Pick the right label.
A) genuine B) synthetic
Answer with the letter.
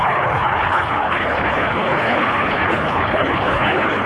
B